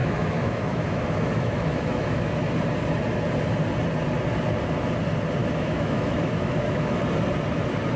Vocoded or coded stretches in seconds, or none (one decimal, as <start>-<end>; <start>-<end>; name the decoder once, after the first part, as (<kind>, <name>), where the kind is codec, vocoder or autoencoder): 0.0-2.5 (autoencoder, DAC-VAE); 5.4-7.0